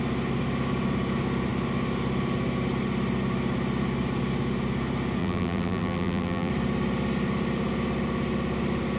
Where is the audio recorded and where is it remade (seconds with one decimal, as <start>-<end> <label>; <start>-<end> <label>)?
0.0-5.2 recorded; 5.2-6.5 remade; 6.5-9.0 recorded